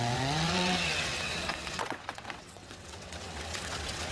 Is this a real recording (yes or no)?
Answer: no